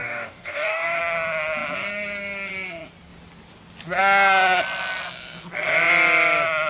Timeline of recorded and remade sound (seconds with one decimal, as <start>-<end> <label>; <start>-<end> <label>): 0.0-1.0 remade; 1.0-6.7 recorded